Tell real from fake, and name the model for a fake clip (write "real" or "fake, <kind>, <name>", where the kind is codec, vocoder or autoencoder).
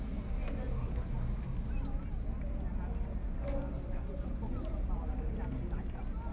real